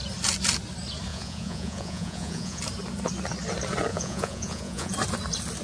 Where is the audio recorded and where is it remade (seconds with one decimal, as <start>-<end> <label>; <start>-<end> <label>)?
0.0-1.1 recorded; 1.1-2.6 remade; 2.6-3.9 recorded; 3.9-4.9 remade; 4.9-5.6 recorded